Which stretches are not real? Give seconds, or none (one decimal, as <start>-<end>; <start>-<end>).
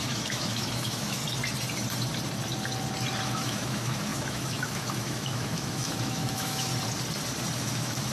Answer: 0.0-1.2; 3.2-6.7; 7.6-8.1